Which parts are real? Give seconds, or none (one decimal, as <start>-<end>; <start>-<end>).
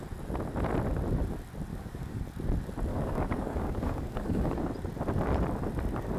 0.0-1.7; 2.2-2.9; 4.6-6.2